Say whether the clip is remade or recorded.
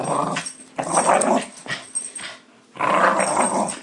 recorded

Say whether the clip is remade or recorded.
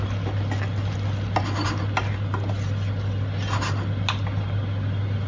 recorded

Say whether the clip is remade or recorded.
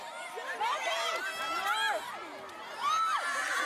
recorded